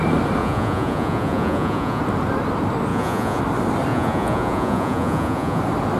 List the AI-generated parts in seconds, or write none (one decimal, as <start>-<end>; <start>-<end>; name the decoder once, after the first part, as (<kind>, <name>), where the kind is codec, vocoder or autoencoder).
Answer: 0.4-2.0 (vocoder, Vocos); 2.9-3.4; 3.9-5.6